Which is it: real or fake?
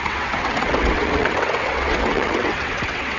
fake